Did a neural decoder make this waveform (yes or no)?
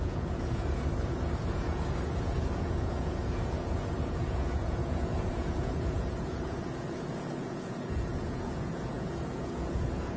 yes